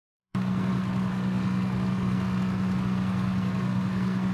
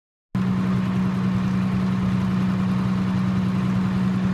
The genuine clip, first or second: second